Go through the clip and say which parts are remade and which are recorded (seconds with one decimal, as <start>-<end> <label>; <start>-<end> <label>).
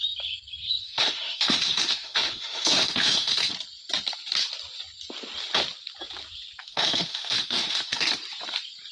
0.0-0.8 recorded; 0.8-3.5 remade; 3.5-6.6 recorded; 6.6-8.1 remade; 8.1-8.9 recorded